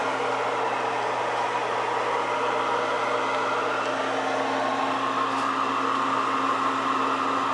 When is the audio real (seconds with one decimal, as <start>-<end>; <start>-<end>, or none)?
0.0-7.5